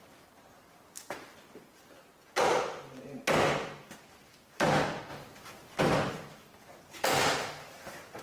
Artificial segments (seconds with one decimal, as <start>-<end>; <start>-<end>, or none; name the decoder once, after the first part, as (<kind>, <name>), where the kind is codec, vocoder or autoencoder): 0.0-2.1 (vocoder, BigVGAN v2); 3.8-8.2